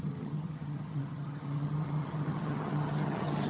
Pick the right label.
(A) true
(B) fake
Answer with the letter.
B